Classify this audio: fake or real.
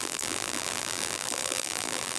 fake